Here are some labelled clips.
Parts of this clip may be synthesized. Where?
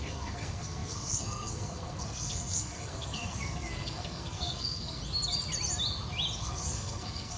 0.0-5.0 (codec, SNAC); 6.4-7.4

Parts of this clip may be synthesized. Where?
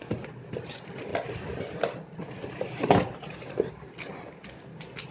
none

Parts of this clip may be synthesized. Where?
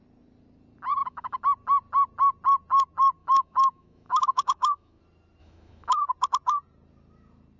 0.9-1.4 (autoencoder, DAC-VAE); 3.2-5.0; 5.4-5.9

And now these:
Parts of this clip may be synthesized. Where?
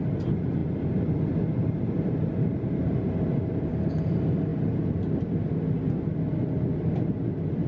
none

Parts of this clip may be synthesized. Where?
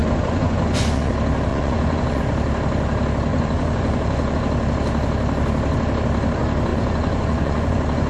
0.0-1.1 (vocoder, Vocos); 1.5-2.2; 3.3-4.4; 6.7-8.1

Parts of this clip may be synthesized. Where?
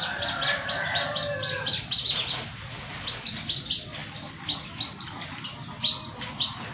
none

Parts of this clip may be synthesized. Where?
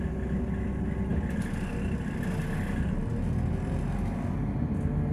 none